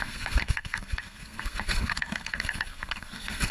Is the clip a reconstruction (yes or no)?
yes